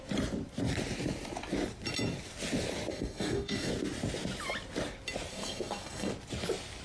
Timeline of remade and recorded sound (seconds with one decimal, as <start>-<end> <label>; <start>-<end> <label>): 0.0-2.9 recorded; 2.9-3.7 remade; 3.7-5.3 recorded; 5.3-6.1 remade; 6.1-6.8 recorded